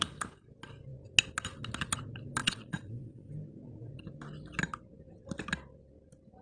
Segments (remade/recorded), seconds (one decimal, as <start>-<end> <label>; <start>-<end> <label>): 0.0-2.4 recorded; 2.4-3.3 remade; 3.3-6.4 recorded